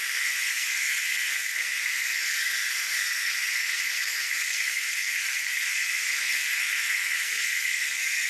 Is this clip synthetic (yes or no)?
yes